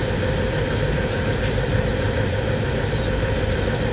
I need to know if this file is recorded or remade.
remade